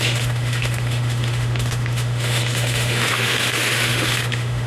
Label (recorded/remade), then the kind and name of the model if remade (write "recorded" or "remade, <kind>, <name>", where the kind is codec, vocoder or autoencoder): remade, autoencoder, DAC-VAE